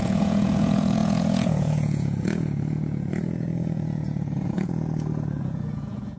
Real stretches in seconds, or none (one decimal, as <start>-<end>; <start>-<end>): none